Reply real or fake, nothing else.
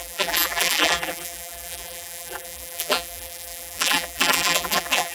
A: fake